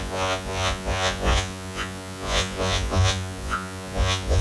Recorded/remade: remade